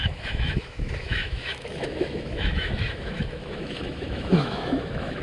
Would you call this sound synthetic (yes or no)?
yes